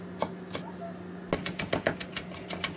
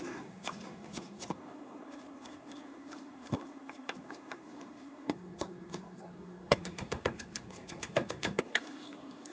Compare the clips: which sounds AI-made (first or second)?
second